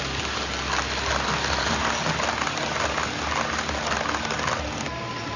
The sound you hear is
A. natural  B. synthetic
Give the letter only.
A